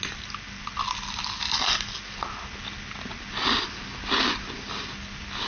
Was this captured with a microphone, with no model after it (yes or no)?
yes